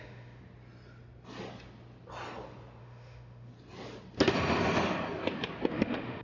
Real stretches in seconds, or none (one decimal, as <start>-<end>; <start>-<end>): 0.4-2.8; 3.5-5.7